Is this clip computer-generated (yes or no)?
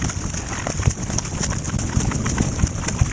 no